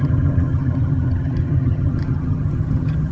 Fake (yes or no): yes